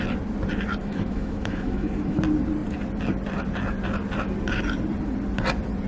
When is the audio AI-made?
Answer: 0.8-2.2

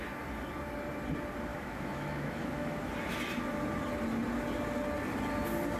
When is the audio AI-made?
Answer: 1.5-2.8